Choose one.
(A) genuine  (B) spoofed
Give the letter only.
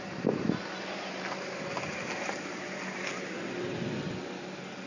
A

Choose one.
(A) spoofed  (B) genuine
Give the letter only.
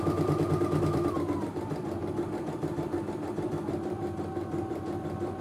A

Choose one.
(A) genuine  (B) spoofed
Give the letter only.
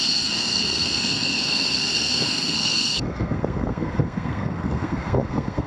B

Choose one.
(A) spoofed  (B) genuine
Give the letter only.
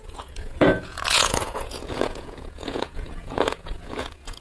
A